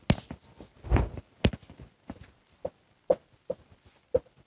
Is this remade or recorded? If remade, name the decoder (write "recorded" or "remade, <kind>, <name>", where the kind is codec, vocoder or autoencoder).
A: recorded